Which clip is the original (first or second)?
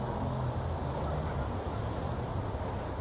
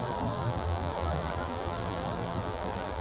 first